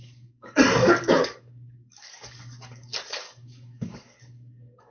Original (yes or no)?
no